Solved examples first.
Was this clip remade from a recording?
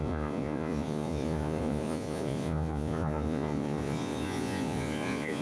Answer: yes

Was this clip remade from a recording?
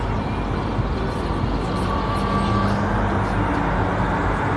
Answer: no